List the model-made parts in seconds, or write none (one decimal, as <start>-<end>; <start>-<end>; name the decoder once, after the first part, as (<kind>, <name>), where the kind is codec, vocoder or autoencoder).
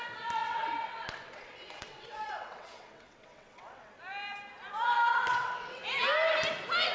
0.4-3.9 (vocoder, WaveNeXt); 5.3-5.8